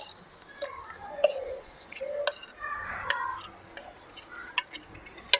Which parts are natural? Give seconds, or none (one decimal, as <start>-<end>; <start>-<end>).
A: 0.0-1.0; 2.0-5.4